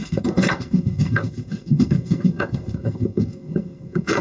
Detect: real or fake fake